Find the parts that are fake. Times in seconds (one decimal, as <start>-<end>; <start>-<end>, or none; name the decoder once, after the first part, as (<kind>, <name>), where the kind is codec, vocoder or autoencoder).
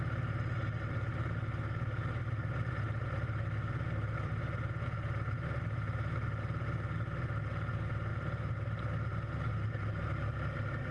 none